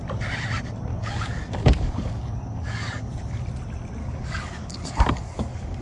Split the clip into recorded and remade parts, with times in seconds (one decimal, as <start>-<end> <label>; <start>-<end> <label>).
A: 0.0-0.9 recorded; 0.9-3.1 remade; 3.1-4.0 recorded; 4.0-5.8 remade